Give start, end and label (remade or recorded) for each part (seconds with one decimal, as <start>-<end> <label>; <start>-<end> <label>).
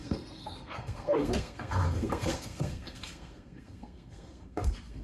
0.0-5.0 remade